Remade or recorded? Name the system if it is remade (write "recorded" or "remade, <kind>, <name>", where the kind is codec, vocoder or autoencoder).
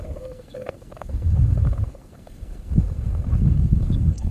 remade, codec, SNAC